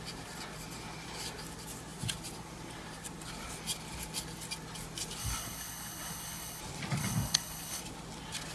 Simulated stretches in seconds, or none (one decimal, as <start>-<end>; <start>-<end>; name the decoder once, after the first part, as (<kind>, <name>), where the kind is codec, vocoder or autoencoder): 5.2-6.6 (codec, HILCodec); 7.0-7.8